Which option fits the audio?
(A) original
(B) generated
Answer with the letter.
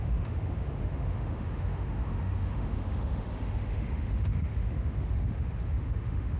B